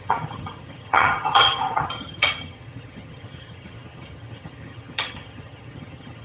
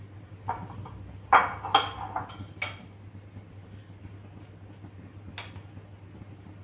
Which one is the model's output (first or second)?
first